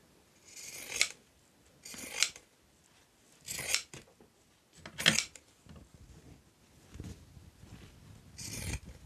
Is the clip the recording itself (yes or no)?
yes